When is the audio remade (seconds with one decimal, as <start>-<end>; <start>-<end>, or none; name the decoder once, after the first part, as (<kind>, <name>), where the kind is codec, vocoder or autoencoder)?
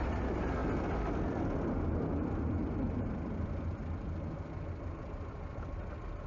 2.6-3.7 (vocoder, BigVGAN v2)